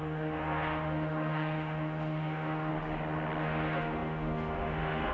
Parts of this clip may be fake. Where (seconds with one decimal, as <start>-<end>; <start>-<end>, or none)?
0.0-2.7; 3.4-5.1